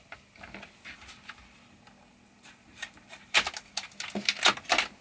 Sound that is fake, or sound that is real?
real